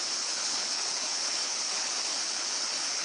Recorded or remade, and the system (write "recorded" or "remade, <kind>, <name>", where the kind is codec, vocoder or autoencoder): remade, codec, HILCodec